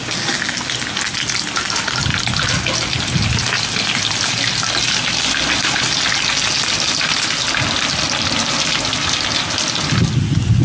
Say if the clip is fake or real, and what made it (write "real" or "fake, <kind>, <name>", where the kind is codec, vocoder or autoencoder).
real